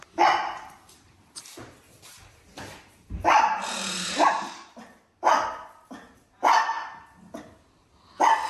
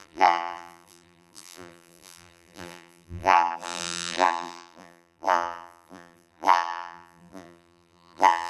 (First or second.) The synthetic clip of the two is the second